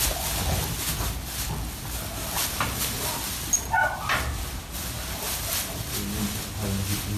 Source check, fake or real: real